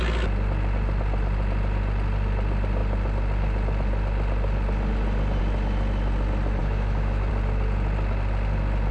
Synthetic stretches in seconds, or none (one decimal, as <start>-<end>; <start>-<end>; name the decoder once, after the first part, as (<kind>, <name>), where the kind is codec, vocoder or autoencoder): 6.6-7.3 (autoencoder, DAC-VAE)